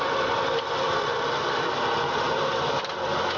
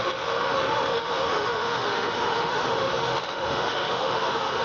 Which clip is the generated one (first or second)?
second